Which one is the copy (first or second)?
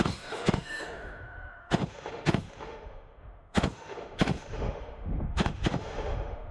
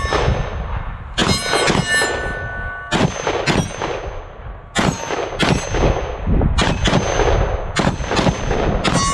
first